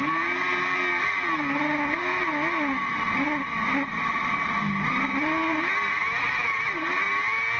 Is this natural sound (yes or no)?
yes